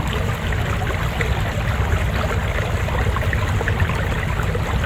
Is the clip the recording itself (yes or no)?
yes